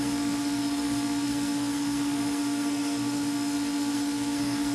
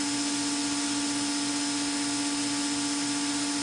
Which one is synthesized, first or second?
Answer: first